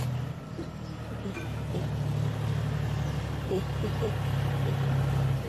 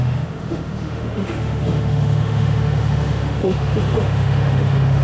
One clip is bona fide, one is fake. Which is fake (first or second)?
second